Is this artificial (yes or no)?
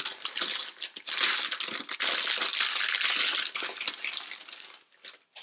no